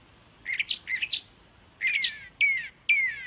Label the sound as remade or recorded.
recorded